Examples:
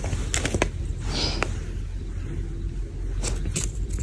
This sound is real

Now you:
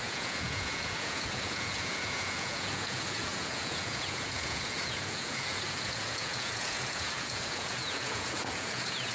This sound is fake